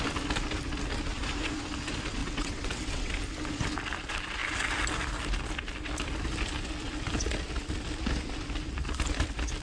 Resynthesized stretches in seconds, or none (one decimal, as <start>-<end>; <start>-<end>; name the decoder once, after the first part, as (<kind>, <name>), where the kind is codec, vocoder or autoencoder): 2.2-3.1 (vocoder, WaveNeXt)